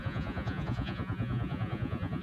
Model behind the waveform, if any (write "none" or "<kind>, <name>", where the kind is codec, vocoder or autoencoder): vocoder, Vocos